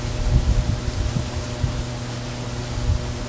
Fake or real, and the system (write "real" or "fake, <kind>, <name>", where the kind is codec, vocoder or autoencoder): real